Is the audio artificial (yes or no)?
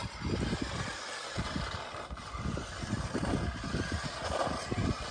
no